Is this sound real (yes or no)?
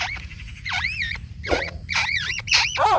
no